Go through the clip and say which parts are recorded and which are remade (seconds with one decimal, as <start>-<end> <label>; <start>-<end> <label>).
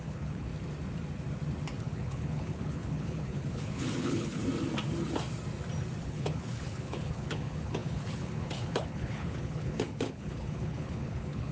0.0-0.5 remade; 0.5-1.8 recorded; 1.8-4.4 remade; 4.4-6.0 recorded; 6.0-11.5 remade